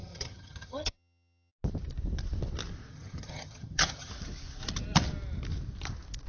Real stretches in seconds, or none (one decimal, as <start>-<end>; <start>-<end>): 1.5-2.9; 4.1-6.3